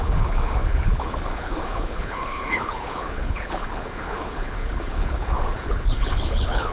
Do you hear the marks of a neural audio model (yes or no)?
yes